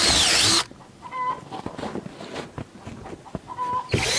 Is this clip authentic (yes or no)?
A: yes